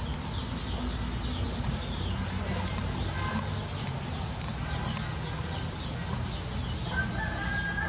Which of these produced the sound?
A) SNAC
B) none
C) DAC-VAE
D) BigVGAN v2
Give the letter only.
B